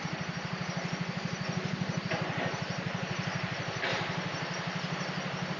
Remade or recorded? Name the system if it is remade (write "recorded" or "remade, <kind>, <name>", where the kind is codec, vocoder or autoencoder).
recorded